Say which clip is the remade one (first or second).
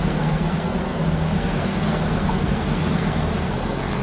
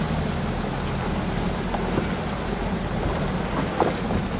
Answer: first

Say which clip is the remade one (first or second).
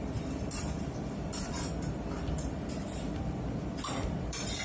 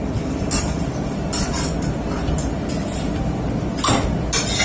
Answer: first